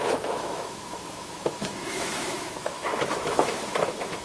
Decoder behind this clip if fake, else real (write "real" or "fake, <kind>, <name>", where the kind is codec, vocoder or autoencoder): fake, autoencoder, DAC-VAE